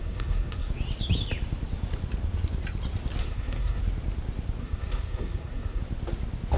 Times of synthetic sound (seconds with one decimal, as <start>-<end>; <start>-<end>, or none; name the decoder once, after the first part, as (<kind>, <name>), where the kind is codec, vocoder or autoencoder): 0.0-0.7 (codec, SNAC); 3.2-3.8; 4.6-5.8